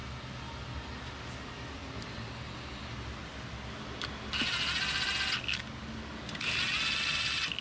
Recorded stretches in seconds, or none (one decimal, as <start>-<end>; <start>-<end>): 0.0-7.6